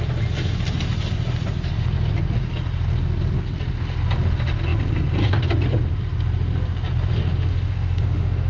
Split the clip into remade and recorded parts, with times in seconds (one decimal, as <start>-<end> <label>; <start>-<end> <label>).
0.0-7.5 recorded; 7.5-8.5 remade